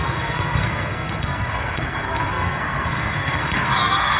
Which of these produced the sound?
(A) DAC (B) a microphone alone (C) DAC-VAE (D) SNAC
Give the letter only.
D